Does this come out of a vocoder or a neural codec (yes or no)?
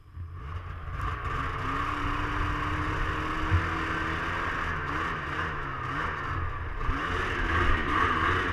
no